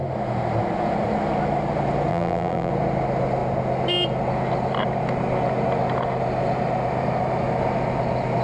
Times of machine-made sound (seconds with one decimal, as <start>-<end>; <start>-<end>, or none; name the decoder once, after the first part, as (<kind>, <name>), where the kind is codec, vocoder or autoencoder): 2.1-2.7 (vocoder, BigVGAN v2)

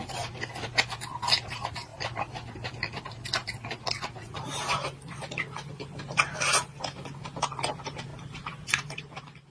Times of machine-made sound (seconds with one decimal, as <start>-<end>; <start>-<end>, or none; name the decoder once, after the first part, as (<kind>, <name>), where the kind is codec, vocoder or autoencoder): 8.1-9.0 (vocoder, BigVGAN v2)

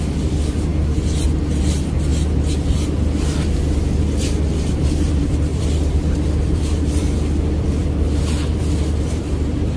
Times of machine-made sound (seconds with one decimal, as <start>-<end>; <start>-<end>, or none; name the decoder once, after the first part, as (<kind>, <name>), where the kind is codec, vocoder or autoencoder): 0.0-0.7 (vocoder, BigVGAN v2); 1.6-2.1; 4.5-7.8; 8.6-9.8